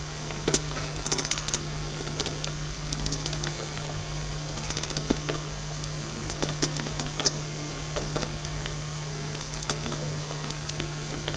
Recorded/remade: remade